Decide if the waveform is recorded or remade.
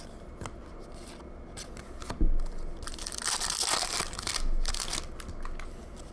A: recorded